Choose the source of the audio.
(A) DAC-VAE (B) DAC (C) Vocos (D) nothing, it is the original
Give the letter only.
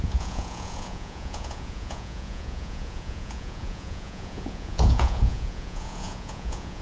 C